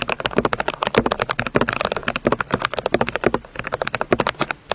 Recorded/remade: recorded